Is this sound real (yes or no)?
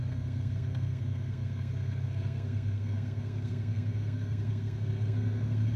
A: no